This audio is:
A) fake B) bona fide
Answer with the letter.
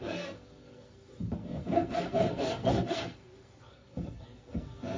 A